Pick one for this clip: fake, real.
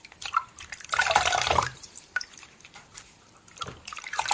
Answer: fake